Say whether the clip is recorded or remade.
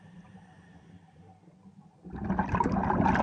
recorded